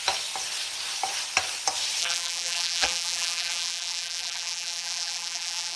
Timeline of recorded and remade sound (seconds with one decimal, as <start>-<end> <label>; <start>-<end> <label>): 0.0-2.0 recorded; 2.0-5.8 remade